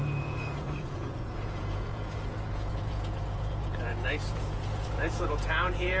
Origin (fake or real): fake